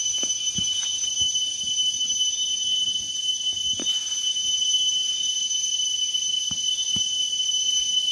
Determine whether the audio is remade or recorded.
recorded